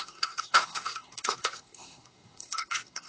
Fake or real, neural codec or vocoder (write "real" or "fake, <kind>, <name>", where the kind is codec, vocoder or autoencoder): fake, codec, SNAC